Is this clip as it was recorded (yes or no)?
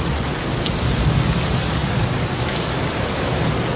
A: yes